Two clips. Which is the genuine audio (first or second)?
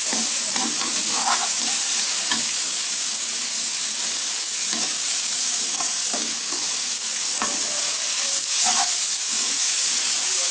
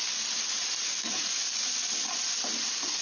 second